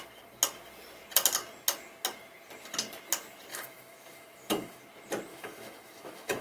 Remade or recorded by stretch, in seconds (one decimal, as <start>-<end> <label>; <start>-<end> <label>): 0.0-3.5 recorded; 3.5-4.8 remade; 4.8-5.3 recorded; 5.3-6.4 remade